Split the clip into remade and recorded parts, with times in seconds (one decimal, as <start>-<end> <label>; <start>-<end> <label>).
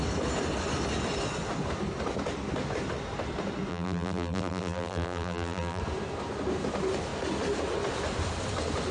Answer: 0.0-3.7 recorded; 3.7-5.8 remade; 5.8-8.9 recorded